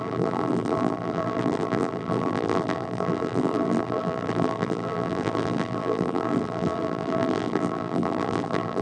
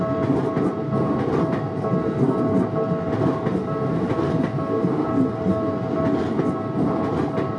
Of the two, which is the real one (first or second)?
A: second